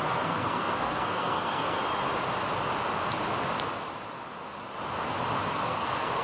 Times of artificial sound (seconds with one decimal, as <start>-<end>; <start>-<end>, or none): 0.0-1.8; 5.5-6.2